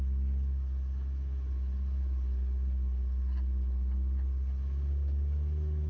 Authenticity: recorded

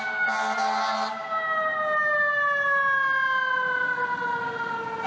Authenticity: recorded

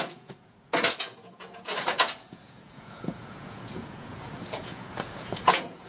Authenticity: remade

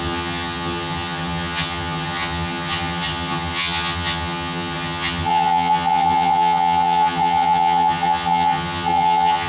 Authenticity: remade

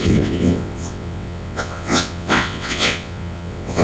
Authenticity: remade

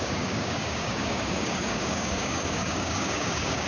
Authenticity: remade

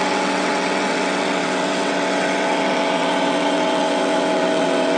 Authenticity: remade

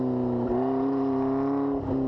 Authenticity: recorded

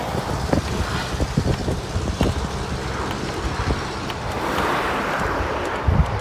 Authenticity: recorded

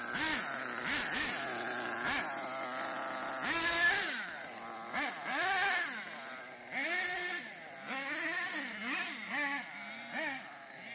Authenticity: recorded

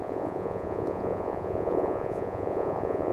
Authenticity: remade